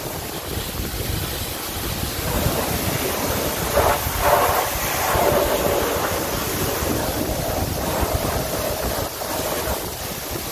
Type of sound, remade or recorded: remade